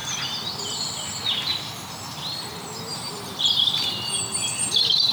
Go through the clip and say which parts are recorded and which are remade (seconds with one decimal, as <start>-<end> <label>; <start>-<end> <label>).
0.0-1.7 remade; 1.7-2.9 recorded; 2.9-3.9 remade; 3.9-5.1 recorded